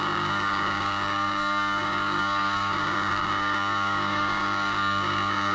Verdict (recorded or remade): remade